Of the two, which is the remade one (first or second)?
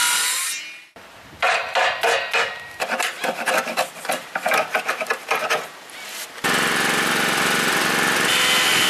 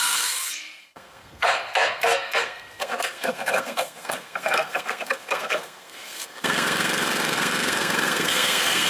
second